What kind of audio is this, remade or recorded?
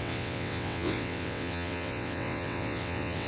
remade